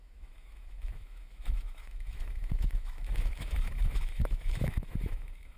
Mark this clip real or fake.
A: fake